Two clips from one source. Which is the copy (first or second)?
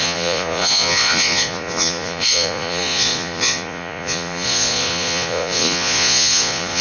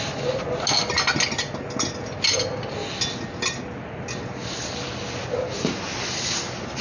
first